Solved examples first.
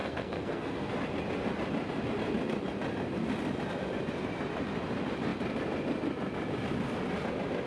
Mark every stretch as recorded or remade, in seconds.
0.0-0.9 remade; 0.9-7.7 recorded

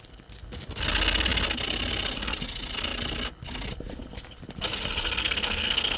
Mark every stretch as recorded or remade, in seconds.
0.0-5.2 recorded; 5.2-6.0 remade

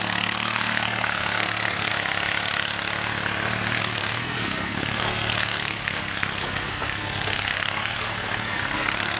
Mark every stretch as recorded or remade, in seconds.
0.0-1.9 remade; 1.9-3.8 recorded; 3.8-9.2 remade

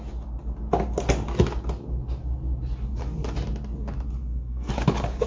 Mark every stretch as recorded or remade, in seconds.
0.0-4.2 recorded; 4.2-4.7 remade; 4.7-5.3 recorded

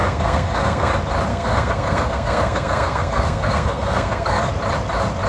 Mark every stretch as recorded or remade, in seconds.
0.0-0.9 remade; 0.9-1.3 recorded; 1.3-4.5 remade; 4.5-5.3 recorded